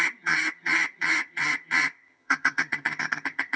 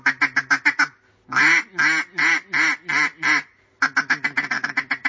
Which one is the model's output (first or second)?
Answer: first